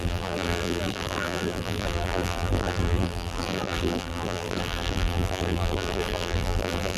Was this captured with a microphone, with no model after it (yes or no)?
no